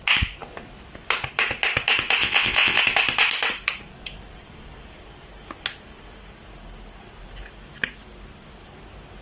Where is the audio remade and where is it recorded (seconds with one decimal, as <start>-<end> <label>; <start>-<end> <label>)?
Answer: 0.0-2.2 recorded; 2.2-2.8 remade; 2.8-9.2 recorded